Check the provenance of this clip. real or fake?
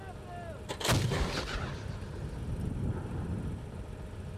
real